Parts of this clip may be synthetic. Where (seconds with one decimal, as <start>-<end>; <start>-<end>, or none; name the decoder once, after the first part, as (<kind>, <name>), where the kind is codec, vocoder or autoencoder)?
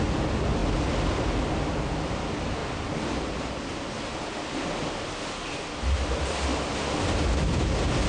none